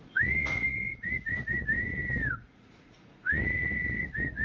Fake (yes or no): yes